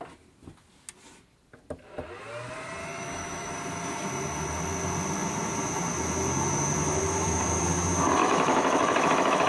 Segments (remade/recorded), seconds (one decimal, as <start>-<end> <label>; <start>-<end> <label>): 0.0-2.8 recorded; 2.8-3.5 remade; 3.5-8.2 recorded; 8.2-9.5 remade